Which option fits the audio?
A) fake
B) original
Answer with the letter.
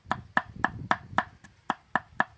B